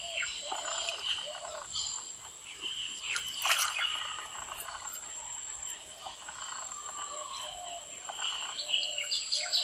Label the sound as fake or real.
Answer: real